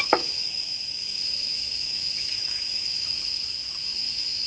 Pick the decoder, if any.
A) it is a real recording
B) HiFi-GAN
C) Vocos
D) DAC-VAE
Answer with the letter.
D